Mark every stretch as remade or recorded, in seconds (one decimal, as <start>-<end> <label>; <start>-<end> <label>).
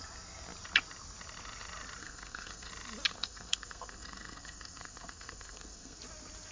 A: 0.0-2.0 recorded; 2.0-2.7 remade; 2.7-3.1 recorded; 3.1-6.0 remade; 6.0-6.5 recorded